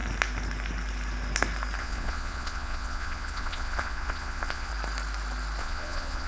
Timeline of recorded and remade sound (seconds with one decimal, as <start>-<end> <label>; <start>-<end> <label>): 0.0-1.8 recorded; 1.8-4.7 remade; 4.7-5.6 recorded; 5.6-6.3 remade